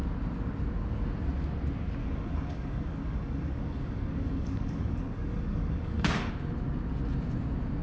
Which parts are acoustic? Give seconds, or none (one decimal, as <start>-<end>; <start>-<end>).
0.0-2.0; 6.3-7.8